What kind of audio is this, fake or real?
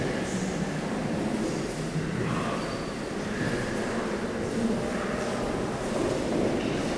real